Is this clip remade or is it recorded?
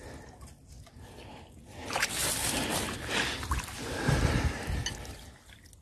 recorded